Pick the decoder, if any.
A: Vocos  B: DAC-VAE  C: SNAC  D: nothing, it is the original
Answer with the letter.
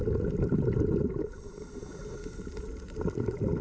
D